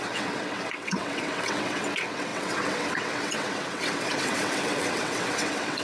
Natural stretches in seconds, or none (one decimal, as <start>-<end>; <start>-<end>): none